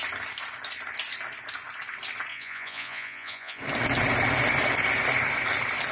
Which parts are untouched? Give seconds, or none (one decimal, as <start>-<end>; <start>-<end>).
0.0-2.3; 3.6-5.9